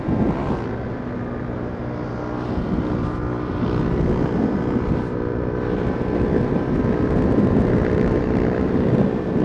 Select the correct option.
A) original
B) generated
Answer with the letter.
A